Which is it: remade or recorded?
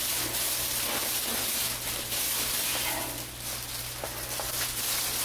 recorded